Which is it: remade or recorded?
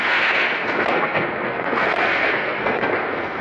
remade